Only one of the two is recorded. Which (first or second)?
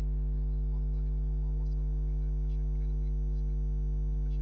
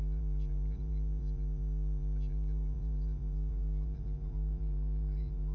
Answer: first